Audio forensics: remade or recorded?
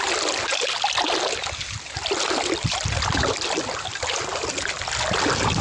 recorded